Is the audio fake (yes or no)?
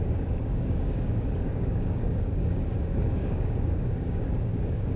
yes